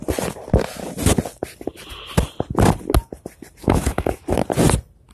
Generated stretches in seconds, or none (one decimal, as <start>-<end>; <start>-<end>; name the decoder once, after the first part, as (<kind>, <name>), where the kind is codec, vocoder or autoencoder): 3.6-4.2 (autoencoder, DAC-VAE)